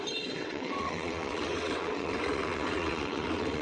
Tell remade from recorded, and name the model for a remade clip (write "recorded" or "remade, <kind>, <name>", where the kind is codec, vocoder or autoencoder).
remade, vocoder, WaveNeXt